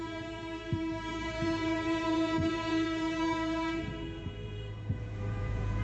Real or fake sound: fake